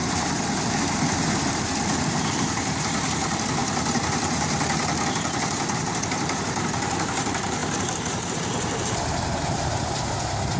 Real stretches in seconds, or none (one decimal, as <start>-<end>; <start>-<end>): 0.0-2.3; 3.6-6.0